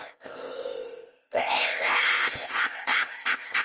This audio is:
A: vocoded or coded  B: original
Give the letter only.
A